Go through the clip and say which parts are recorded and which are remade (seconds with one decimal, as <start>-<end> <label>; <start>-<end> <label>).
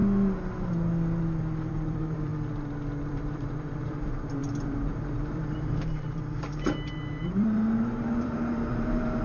0.0-1.7 recorded; 1.7-2.3 remade; 2.3-3.1 recorded; 3.1-9.2 remade